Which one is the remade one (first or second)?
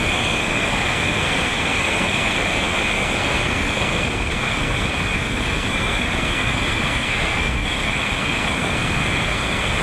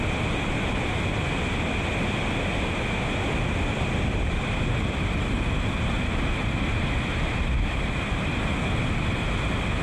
first